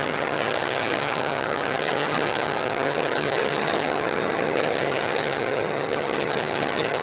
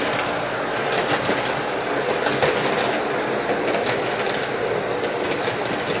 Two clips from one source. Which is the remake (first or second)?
first